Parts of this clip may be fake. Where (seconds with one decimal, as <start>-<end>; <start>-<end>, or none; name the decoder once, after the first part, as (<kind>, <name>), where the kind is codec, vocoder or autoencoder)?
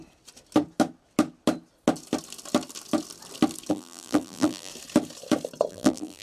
3.7-4.7 (vocoder, BigVGAN v2); 5.7-6.2